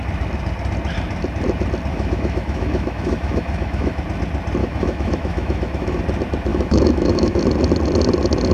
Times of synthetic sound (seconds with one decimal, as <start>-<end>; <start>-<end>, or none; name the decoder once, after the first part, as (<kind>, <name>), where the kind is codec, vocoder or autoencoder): 1.9-4.0 (autoencoder, DAC-VAE); 4.6-6.0; 6.5-7.4